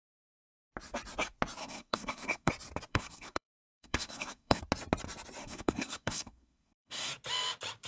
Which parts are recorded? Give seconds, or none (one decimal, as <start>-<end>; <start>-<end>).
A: 0.0-1.6; 2.5-2.9; 4.6-5.4; 7.1-7.9